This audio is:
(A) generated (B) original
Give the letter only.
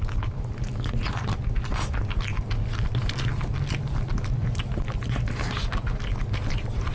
B